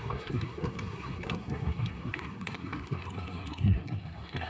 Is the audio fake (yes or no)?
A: yes